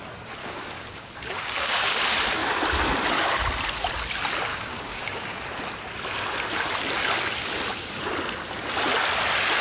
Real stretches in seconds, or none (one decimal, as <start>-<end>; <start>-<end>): 0.0-0.4; 2.0-4.5; 5.4-9.6

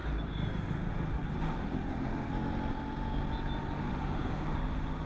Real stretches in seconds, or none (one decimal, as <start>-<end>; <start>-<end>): 0.0-0.9; 2.3-3.8

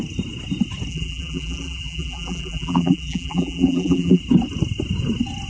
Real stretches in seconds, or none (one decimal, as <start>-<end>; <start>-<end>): 0.0-0.9; 4.2-5.5

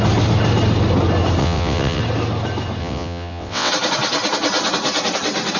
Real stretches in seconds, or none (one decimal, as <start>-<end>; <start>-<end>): 0.0-1.4; 2.0-2.8; 3.7-5.6